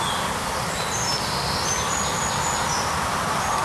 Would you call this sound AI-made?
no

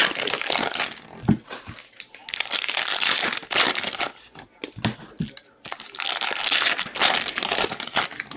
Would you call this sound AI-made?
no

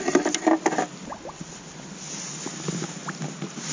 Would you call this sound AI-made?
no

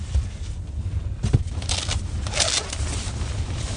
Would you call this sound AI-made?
no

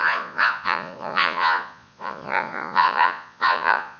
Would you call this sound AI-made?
yes